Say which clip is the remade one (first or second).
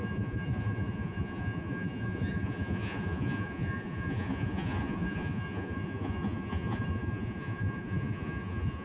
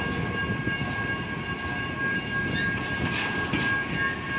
first